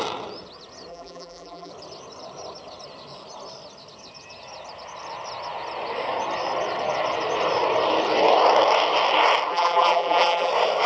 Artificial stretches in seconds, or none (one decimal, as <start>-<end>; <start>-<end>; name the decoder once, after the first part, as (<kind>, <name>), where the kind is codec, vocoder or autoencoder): 0.9-1.7 (vocoder, BigVGAN v2); 9.5-10.5